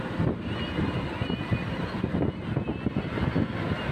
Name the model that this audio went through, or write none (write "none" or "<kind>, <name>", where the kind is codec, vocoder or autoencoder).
none